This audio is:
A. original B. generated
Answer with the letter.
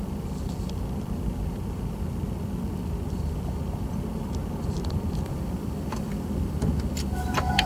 B